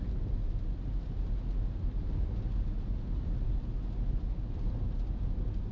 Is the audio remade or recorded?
recorded